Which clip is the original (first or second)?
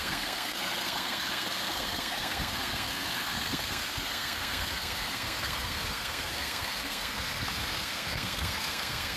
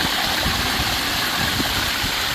second